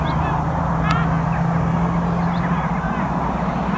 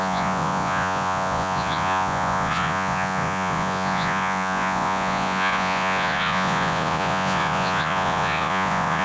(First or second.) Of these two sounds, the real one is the first